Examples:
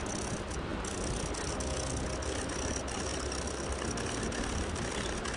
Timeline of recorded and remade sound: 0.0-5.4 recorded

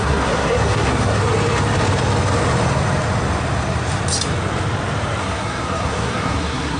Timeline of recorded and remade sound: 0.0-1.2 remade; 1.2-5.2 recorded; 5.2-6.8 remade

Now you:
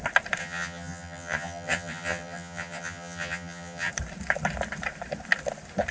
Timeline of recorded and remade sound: 0.0-0.4 recorded; 0.4-3.9 remade; 3.9-5.9 recorded

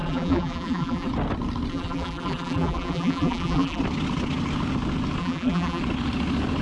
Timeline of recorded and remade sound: 0.0-1.1 remade; 1.1-1.7 recorded; 1.7-3.8 remade; 3.8-5.2 recorded; 5.2-5.8 remade; 5.8-6.6 recorded

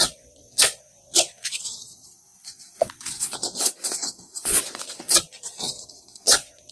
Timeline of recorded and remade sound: 0.0-6.7 remade

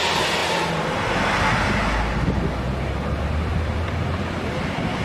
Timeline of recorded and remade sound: 0.0-0.4 remade; 0.4-3.4 recorded; 3.4-5.0 remade

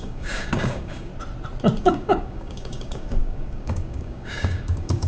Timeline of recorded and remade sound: 0.0-1.1 remade; 1.1-1.8 recorded; 1.8-5.1 remade

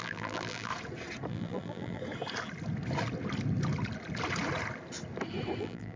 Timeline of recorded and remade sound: 0.0-0.7 remade; 0.7-1.3 recorded; 1.3-2.0 remade; 2.0-5.6 recorded; 5.6-6.0 remade